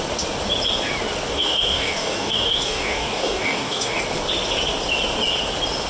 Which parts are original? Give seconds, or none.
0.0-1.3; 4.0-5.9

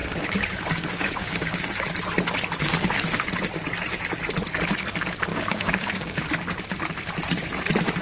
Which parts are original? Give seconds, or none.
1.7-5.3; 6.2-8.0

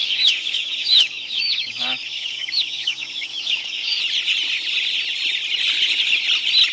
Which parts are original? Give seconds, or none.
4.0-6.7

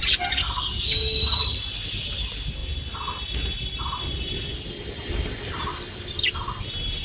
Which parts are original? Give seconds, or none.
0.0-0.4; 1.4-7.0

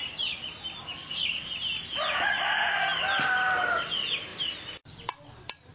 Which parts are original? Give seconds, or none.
0.0-0.8; 1.5-5.7

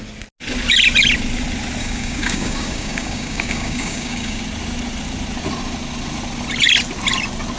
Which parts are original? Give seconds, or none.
0.0-1.8; 4.4-7.6

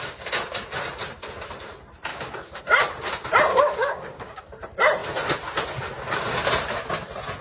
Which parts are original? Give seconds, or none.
0.0-2.1; 2.6-3.5; 4.4-7.4